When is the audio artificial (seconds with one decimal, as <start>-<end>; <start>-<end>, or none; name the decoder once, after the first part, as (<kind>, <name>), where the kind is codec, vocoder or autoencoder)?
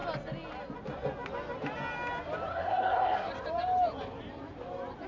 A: 2.5-3.3 (codec, SNAC)